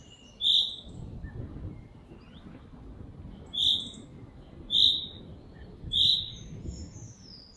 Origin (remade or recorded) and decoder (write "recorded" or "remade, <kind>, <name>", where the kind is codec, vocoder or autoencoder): remade, vocoder, BigVGAN v2